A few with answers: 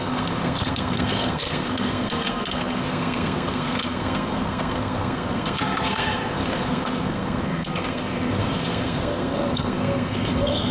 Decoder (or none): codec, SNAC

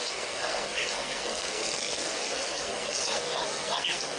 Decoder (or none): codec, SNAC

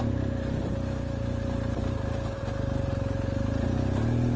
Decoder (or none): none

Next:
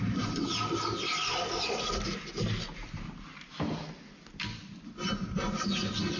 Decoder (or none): none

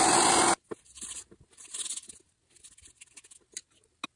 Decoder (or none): none